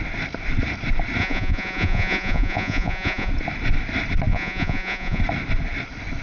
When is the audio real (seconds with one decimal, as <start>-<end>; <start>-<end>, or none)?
0.0-1.2; 3.3-4.3; 5.2-6.2